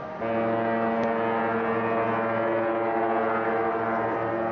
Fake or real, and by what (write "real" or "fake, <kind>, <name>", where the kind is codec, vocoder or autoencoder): real